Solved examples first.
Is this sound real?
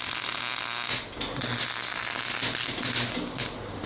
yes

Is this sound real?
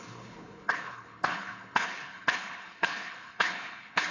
no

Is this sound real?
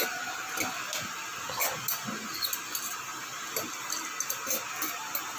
yes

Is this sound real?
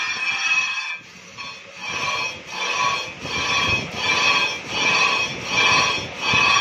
yes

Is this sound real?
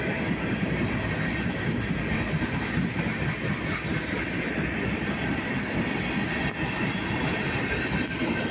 yes